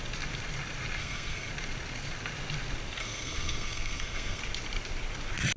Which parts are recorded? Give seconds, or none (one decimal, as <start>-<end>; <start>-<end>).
0.0-1.0; 1.5-3.0; 4.4-5.6